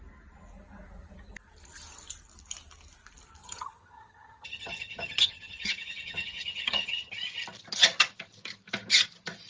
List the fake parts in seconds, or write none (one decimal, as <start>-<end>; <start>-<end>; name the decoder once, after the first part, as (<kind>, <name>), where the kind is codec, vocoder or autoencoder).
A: 3.4-7.1 (vocoder, HiFi-GAN)